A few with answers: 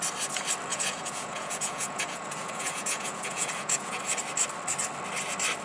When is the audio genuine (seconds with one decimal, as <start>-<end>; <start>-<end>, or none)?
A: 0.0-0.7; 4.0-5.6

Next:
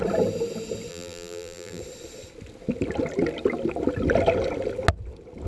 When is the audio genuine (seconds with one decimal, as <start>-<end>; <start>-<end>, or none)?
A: 0.0-0.9; 1.8-5.5

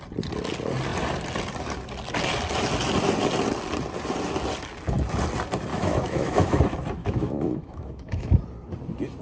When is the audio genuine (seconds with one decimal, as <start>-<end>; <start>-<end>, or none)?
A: 0.0-5.7; 6.6-7.0; 8.4-9.2

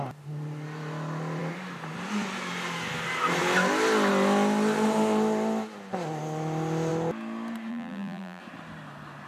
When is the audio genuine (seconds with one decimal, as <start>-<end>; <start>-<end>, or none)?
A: 0.0-7.7; 8.4-9.3